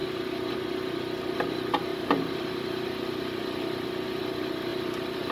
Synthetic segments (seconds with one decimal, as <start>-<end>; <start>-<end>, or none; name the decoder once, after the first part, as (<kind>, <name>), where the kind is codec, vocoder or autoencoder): 1.9-4.3 (vocoder, BigVGAN v2); 4.7-5.3